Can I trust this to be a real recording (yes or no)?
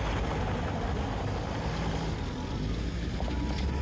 yes